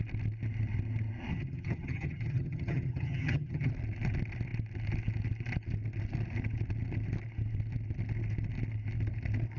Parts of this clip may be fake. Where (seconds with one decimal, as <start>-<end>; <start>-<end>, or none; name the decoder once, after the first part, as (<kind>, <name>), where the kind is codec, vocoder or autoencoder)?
1.3-3.7 (vocoder, HiFi-GAN)